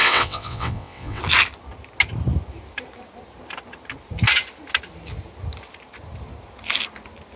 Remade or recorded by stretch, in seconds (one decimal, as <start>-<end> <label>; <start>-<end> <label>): 0.0-1.2 remade; 1.2-7.4 recorded